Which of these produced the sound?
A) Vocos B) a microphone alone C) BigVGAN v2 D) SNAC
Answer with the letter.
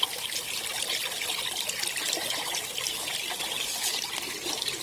B